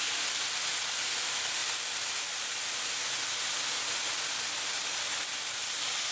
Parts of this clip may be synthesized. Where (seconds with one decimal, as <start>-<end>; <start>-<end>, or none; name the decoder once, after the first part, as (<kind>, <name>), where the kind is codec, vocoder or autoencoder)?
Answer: none